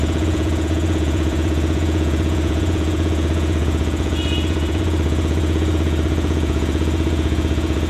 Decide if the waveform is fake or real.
fake